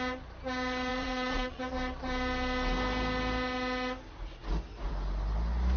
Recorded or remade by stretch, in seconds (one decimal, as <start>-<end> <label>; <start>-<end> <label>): 0.0-0.9 recorded; 0.9-1.6 remade; 1.6-5.8 recorded